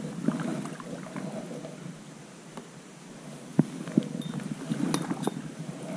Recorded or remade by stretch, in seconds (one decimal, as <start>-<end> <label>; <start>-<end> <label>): 0.0-6.0 recorded